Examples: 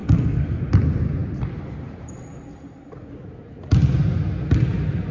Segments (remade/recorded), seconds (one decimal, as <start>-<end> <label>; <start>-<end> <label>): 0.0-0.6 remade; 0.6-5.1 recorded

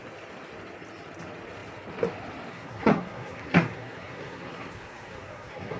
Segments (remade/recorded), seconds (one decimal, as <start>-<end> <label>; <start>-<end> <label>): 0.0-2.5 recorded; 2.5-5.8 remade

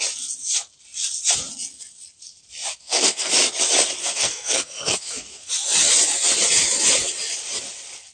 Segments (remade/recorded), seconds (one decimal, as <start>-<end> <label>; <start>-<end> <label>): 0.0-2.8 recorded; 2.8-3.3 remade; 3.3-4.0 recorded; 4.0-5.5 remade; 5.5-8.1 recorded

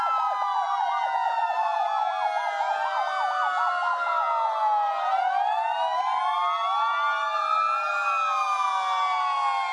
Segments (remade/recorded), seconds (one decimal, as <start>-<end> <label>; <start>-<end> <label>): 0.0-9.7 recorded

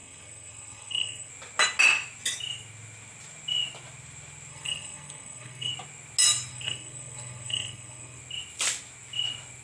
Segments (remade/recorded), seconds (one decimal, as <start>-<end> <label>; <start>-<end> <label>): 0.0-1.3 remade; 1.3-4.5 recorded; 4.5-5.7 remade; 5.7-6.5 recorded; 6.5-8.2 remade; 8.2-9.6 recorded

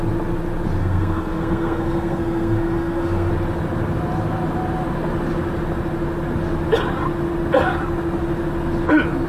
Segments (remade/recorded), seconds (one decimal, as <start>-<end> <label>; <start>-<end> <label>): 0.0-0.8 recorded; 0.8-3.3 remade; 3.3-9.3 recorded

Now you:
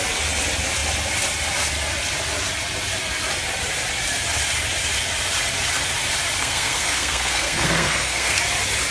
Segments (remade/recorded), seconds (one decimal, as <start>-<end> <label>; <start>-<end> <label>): 0.0-6.4 recorded; 6.4-8.4 remade; 8.4-8.9 recorded